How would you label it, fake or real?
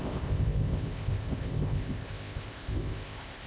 fake